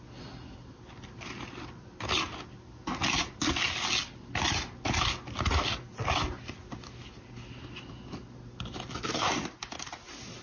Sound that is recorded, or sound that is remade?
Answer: recorded